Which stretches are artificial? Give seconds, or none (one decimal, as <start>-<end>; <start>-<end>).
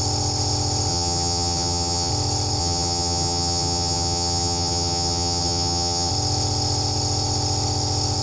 0.9-2.1; 2.6-6.1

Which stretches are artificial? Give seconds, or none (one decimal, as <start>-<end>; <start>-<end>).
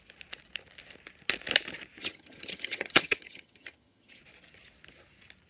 2.0-4.2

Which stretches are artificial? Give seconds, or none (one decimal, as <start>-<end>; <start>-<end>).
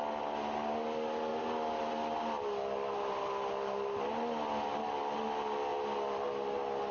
none